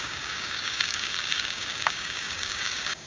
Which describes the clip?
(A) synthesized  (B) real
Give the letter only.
A